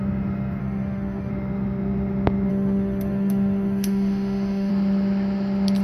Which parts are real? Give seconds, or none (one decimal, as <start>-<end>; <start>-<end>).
0.0-0.6; 1.3-2.5; 4.7-5.8